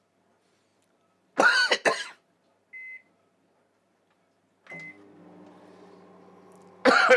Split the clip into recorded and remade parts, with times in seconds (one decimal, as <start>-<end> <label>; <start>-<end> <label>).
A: 0.0-7.2 recorded